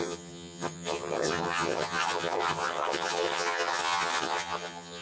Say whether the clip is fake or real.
fake